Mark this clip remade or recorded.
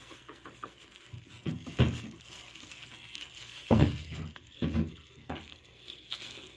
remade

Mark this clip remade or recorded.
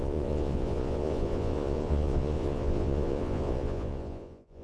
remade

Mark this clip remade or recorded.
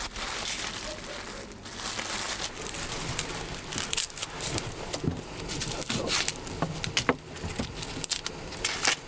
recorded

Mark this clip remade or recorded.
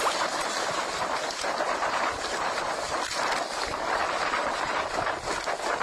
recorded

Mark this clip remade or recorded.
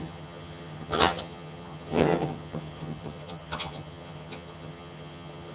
remade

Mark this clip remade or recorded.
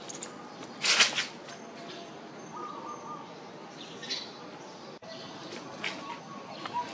recorded